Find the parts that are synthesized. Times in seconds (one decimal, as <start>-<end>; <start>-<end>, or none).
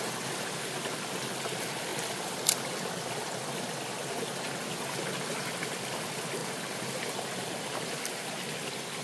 none